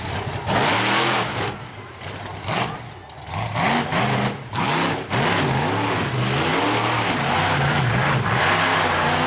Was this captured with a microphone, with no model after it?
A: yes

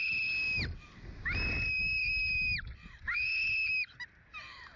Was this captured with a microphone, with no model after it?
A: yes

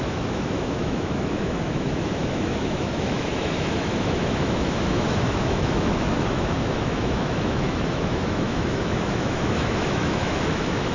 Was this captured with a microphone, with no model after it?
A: no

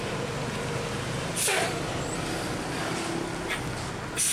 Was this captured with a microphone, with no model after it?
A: yes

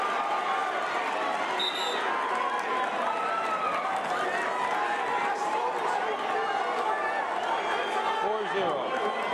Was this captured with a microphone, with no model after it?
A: yes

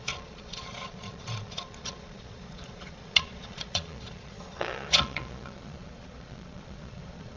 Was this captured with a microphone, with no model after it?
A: no